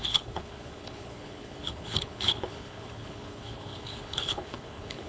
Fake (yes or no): yes